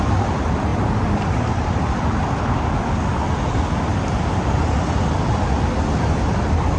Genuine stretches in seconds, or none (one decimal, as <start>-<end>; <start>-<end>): 0.0-6.8